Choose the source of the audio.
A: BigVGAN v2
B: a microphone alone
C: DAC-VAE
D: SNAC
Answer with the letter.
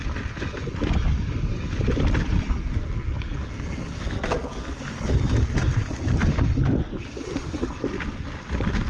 B